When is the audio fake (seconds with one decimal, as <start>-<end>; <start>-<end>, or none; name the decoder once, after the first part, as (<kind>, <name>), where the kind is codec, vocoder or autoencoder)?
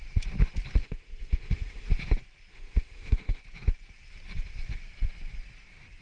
0.8-1.9 (autoencoder, DAC-VAE); 2.5-3.4